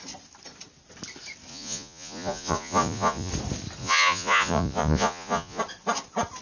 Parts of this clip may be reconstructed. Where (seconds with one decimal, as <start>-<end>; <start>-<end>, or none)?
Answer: 1.5-3.3; 3.8-5.6

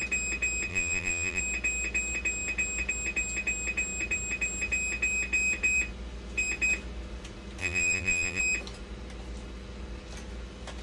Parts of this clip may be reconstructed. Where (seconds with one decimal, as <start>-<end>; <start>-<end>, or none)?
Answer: 0.7-1.4; 7.6-8.4

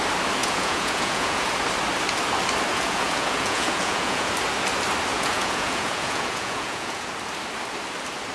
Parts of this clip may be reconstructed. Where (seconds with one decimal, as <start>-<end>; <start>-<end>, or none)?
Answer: 0.4-1.5; 2.7-4.3; 5.1-7.1

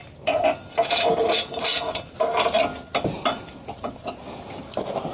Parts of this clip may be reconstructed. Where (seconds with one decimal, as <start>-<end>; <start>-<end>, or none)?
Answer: none

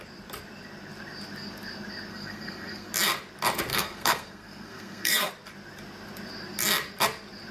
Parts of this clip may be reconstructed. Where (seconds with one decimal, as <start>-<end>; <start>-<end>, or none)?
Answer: 2.1-2.9; 3.7-5.3